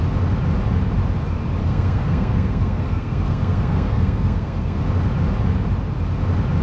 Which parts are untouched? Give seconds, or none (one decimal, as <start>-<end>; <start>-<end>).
0.0-1.6; 4.8-6.6